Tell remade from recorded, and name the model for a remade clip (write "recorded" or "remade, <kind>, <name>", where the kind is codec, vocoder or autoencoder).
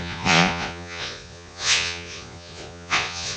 remade, vocoder, Vocos